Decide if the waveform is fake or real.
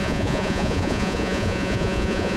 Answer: fake